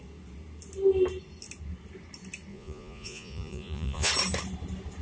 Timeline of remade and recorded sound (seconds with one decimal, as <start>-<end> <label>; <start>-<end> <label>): 0.0-2.5 recorded; 2.5-4.1 remade; 4.1-5.0 recorded